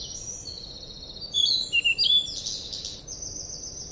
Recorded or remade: recorded